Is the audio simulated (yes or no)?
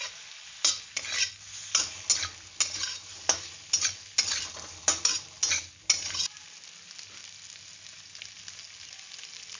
no